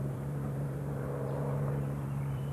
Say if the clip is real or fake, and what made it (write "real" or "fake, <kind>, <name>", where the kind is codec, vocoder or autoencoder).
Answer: fake, vocoder, BigVGAN v2